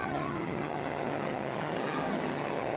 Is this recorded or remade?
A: remade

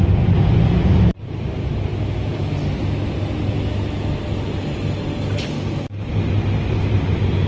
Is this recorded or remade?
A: recorded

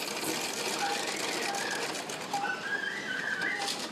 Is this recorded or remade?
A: recorded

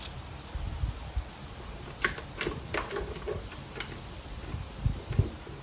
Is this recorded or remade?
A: recorded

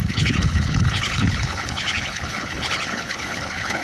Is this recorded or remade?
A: remade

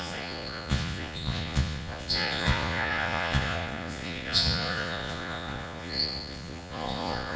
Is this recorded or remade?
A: remade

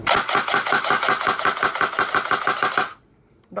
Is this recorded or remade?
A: recorded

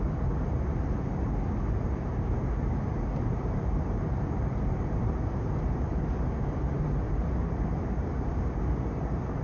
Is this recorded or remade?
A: remade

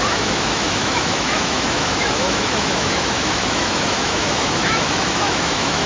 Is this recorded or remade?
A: remade